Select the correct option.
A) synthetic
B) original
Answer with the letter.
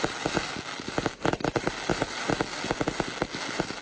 B